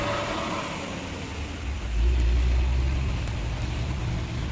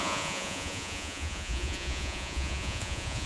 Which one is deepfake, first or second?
second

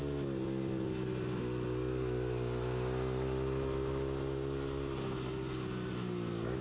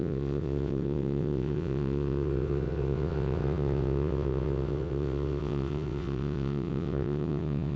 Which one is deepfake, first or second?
second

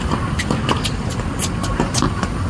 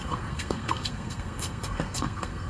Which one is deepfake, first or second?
second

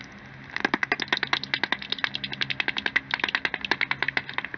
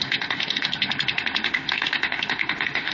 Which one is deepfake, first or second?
second